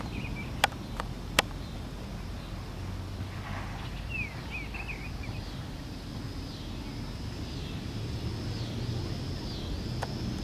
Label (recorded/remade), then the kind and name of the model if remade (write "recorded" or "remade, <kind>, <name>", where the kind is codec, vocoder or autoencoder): recorded